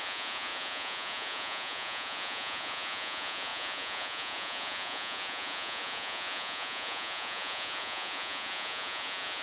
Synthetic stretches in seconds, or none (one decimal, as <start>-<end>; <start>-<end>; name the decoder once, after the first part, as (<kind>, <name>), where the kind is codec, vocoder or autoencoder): 0.0-9.4 (vocoder, Vocos)